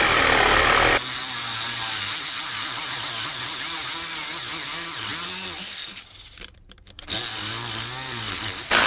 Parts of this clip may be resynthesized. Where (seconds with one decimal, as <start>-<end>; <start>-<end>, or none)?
none